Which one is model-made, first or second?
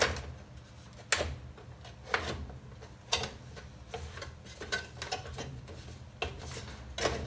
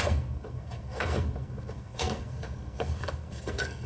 second